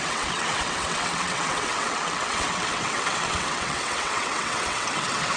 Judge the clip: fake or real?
fake